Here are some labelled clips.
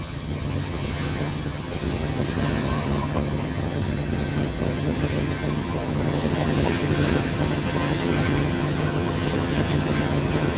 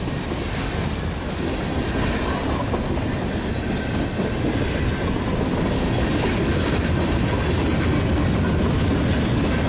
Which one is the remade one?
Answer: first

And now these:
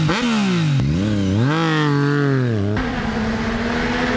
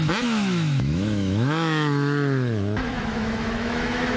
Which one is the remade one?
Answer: second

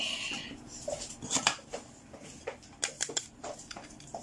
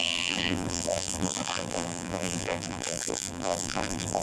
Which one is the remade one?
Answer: second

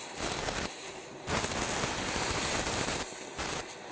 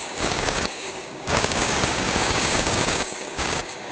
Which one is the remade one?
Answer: second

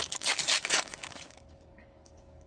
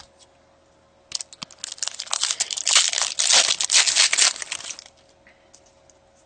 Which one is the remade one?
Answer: first